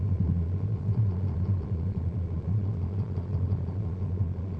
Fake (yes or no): yes